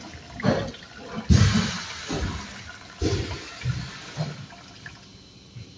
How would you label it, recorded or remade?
recorded